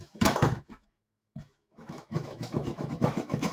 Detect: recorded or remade remade